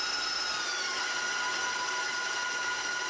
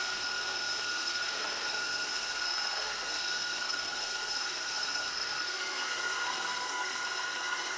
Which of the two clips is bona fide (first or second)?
first